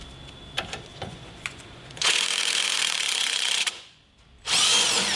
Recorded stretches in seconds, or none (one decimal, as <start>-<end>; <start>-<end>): 0.0-0.9; 4.0-5.2